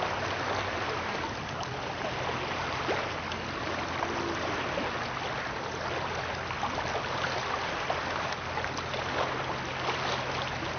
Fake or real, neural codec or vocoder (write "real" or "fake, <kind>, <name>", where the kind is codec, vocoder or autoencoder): real